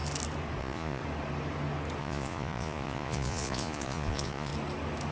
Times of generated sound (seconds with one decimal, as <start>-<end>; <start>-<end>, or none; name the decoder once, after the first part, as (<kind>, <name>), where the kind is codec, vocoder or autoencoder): 0.6-1.0 (vocoder, Vocos); 2.0-4.5

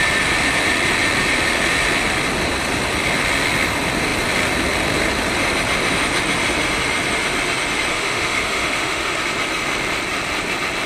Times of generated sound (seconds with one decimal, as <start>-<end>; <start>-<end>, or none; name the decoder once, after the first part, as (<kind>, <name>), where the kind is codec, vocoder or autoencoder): 7.9-9.2 (autoencoder, DAC-VAE)

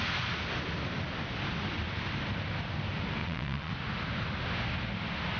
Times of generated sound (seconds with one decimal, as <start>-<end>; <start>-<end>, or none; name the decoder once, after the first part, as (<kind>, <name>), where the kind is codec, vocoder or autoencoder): 3.2-3.7 (vocoder, Vocos)

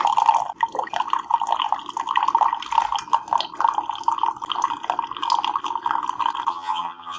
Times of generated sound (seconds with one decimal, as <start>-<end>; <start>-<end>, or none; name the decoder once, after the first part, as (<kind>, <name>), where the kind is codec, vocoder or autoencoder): 6.5-7.2 (vocoder, HiFi-GAN)